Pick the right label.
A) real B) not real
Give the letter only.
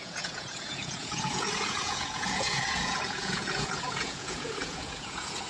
B